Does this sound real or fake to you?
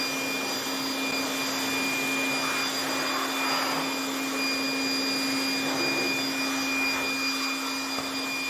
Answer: real